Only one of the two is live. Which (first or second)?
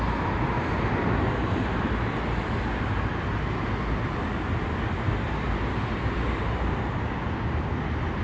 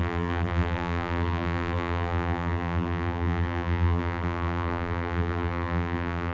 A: first